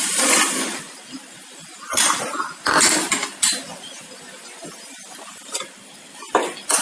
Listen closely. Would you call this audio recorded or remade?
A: recorded